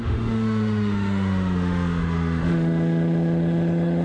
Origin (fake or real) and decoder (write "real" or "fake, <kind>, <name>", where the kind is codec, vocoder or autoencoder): fake, autoencoder, DAC-VAE